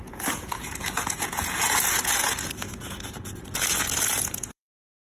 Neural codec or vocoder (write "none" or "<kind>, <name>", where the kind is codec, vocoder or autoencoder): vocoder, Vocos